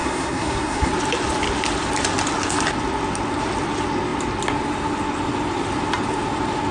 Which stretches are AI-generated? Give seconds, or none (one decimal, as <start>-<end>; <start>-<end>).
0.0-0.9